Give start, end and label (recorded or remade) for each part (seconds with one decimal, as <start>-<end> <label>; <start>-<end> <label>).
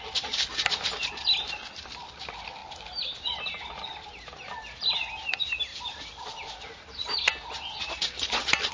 0.0-5.7 recorded; 5.7-8.2 remade; 8.2-8.7 recorded